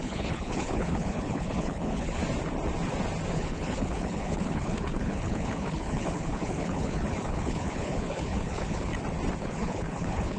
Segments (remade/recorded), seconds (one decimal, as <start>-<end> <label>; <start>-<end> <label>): 0.0-2.2 remade; 2.2-3.3 recorded; 3.3-8.9 remade; 8.9-9.4 recorded; 9.4-10.4 remade